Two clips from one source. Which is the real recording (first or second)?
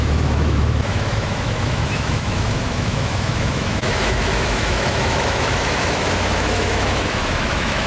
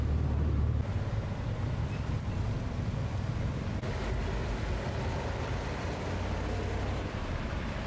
second